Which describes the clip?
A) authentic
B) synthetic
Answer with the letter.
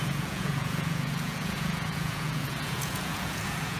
B